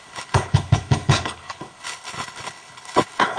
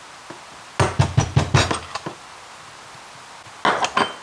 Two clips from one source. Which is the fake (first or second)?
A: first